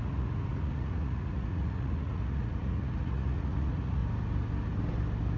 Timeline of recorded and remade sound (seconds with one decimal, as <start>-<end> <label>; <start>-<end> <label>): 0.0-4.0 remade; 4.0-5.4 recorded